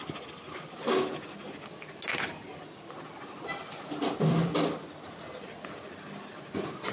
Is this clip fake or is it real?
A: real